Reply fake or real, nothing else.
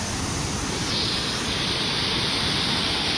real